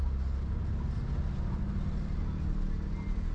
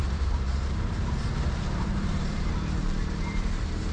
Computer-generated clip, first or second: second